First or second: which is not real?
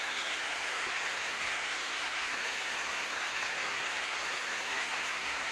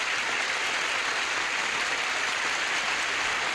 first